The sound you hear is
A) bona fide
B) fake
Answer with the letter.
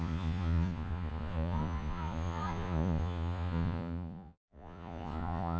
B